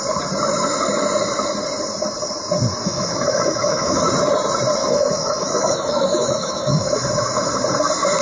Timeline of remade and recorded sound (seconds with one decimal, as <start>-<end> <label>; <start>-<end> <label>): 0.0-2.8 recorded; 2.8-4.1 remade; 4.1-4.8 recorded; 4.8-7.5 remade; 7.5-8.2 recorded